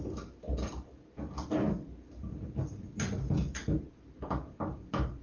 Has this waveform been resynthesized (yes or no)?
no